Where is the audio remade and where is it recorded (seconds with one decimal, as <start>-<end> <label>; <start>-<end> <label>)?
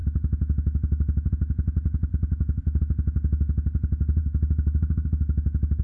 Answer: 0.0-1.3 remade; 1.3-2.1 recorded; 2.1-2.8 remade; 2.8-4.2 recorded; 4.2-5.8 remade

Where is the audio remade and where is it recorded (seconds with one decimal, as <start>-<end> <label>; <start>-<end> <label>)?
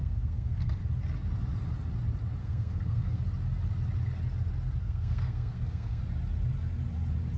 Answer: 0.0-0.8 remade; 0.8-2.4 recorded; 2.4-3.2 remade; 3.2-4.8 recorded; 4.8-6.0 remade; 6.0-7.4 recorded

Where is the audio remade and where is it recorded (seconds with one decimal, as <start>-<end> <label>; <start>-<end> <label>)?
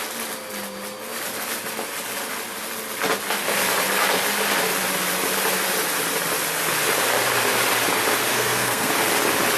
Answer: 0.0-8.3 recorded; 8.3-8.9 remade; 8.9-9.6 recorded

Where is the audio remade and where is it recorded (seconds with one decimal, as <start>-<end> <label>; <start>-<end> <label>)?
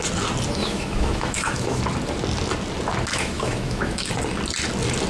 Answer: 0.0-0.6 recorded; 0.6-1.8 remade; 1.8-3.1 recorded; 3.1-4.1 remade; 4.1-5.1 recorded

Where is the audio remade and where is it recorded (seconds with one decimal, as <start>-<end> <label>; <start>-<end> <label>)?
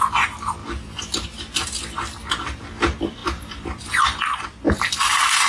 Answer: 0.0-0.6 recorded; 0.6-2.6 remade; 2.6-3.2 recorded; 3.2-4.9 remade; 4.9-5.5 recorded